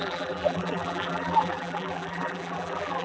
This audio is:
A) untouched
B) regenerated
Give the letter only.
B